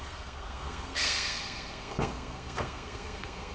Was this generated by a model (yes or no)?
yes